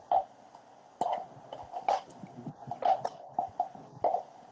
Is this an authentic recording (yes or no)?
yes